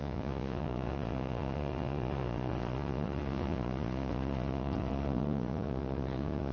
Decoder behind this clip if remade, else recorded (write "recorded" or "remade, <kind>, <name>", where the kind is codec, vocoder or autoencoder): remade, vocoder, Vocos